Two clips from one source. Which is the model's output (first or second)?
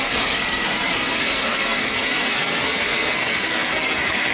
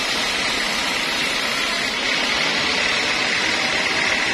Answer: first